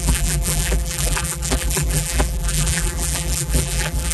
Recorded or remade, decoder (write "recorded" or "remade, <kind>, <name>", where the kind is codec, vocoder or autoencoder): remade, vocoder, BigVGAN v2